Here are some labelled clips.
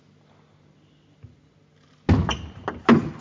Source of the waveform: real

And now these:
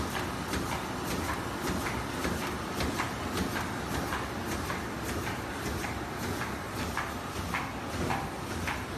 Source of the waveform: real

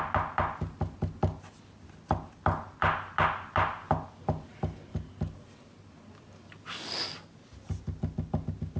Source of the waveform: real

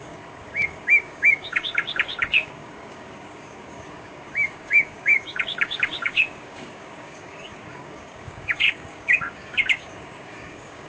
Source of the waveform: fake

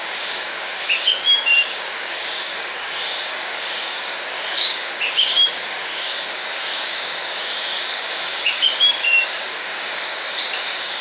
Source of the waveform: fake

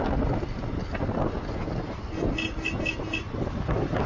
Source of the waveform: real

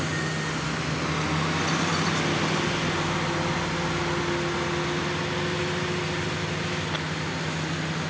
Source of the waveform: real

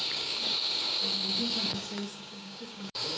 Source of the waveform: fake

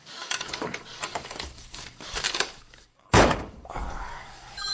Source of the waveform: fake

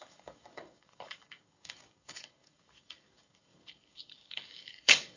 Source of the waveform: fake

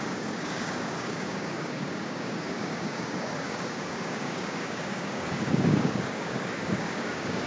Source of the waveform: fake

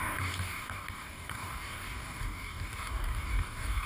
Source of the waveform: fake